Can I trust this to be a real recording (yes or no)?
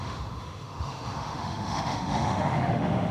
no